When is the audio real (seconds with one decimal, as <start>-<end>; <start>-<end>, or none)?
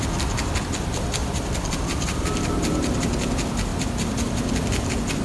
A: 0.0-1.2; 2.5-5.2